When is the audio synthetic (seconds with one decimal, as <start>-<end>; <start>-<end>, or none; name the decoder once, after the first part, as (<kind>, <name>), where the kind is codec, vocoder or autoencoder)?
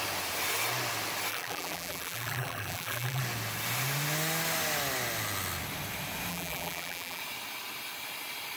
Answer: 1.3-3.2 (vocoder, BigVGAN v2); 6.3-7.2